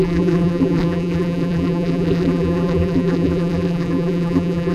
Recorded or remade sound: remade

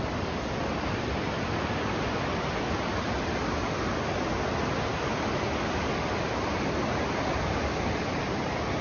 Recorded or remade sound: recorded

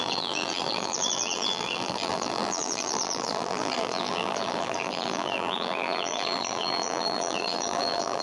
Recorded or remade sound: remade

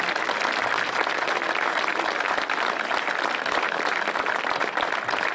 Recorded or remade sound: recorded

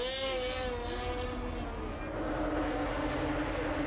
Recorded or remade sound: recorded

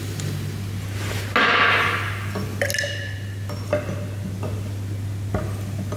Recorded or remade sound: recorded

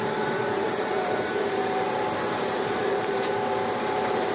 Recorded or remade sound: remade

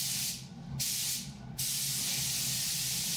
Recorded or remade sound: recorded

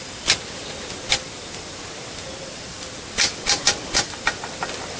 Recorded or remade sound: remade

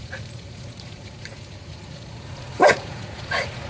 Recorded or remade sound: remade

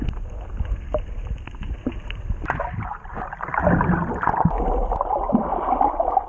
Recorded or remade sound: recorded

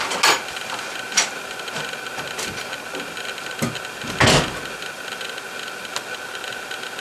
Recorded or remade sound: recorded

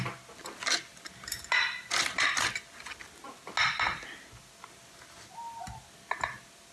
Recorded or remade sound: recorded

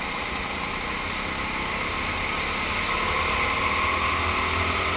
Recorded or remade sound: recorded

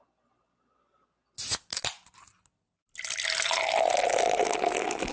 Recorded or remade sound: recorded